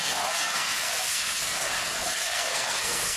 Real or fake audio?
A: fake